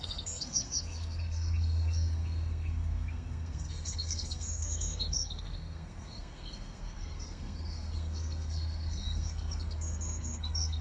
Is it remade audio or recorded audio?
remade